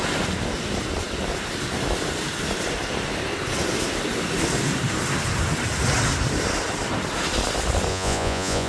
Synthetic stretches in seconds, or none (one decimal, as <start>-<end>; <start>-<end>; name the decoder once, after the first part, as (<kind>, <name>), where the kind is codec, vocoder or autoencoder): 7.9-8.7 (vocoder, Vocos)

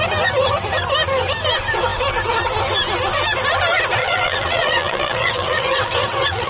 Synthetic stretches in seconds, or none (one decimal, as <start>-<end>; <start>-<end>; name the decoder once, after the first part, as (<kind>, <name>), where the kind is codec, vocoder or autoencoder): 4.0-6.5 (vocoder, WaveNeXt)

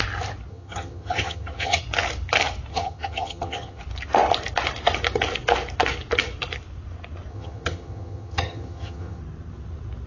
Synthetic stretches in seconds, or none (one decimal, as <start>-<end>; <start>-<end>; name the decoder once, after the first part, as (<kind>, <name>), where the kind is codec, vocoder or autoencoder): 0.5-1.8 (vocoder, HiFi-GAN); 2.7-3.8; 7.3-9.2